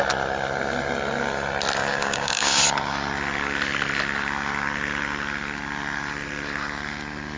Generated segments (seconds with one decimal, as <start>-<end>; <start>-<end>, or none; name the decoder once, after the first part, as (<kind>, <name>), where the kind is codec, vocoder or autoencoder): 1.8-2.6 (codec, DAC)